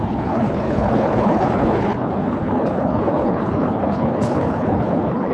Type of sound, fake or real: fake